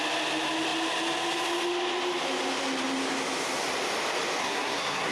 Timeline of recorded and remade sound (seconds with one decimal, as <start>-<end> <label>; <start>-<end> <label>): 0.0-4.4 recorded; 4.4-5.1 remade